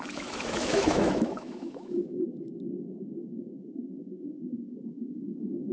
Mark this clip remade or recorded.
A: remade